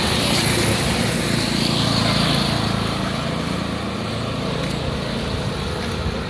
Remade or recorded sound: recorded